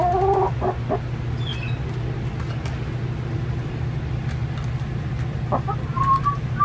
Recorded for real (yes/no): yes